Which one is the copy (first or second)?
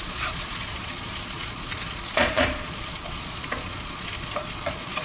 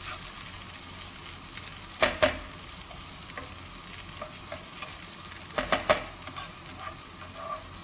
first